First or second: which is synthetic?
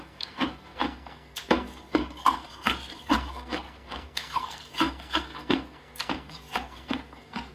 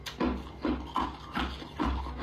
first